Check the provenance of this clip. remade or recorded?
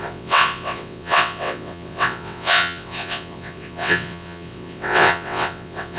remade